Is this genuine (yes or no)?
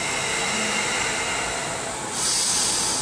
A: yes